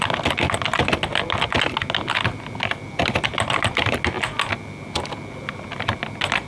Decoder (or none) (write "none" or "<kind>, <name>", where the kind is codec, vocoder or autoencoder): none